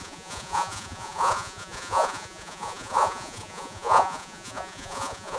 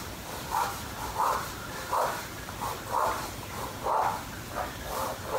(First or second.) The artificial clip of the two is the first